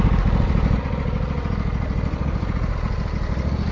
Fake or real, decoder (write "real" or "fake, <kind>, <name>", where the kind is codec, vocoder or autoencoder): real